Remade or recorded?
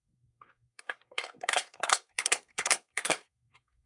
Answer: remade